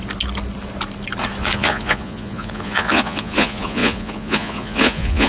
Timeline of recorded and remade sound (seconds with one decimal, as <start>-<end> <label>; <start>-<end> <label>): 0.0-1.4 recorded; 1.4-5.3 remade